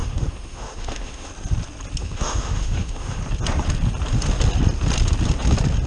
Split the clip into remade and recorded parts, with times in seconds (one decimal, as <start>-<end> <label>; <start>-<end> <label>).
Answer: 0.0-1.3 remade; 1.3-2.0 recorded; 2.0-3.2 remade; 3.2-5.9 recorded